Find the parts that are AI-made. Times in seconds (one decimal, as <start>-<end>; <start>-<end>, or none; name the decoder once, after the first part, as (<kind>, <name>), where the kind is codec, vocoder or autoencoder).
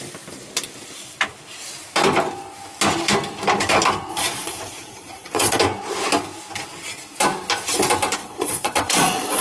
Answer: 4.1-5.6 (vocoder, Vocos); 8.2-9.4